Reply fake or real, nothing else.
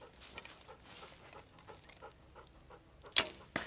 real